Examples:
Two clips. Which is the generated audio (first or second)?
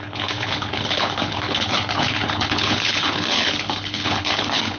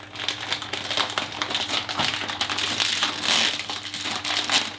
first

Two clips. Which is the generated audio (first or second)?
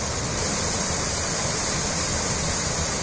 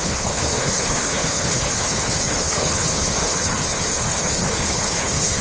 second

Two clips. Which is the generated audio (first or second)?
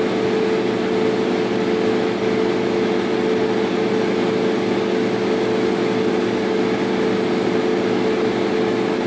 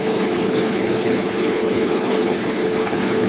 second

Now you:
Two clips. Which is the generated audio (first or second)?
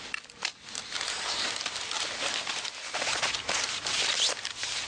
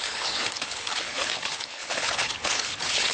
second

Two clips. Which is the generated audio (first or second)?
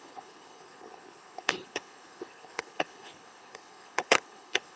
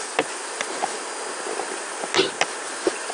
first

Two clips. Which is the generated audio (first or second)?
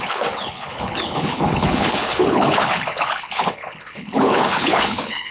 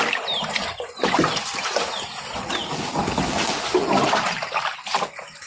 first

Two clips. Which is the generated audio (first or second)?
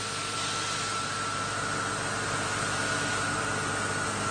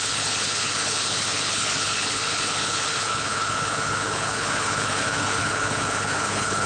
second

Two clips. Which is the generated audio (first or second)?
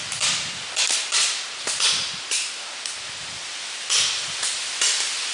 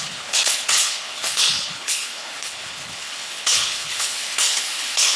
second